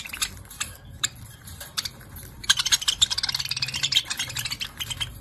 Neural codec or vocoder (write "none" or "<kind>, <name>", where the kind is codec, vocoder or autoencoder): vocoder, BigVGAN v2